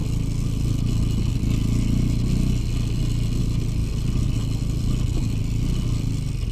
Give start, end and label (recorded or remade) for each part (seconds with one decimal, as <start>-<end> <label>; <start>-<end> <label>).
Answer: 0.0-6.5 recorded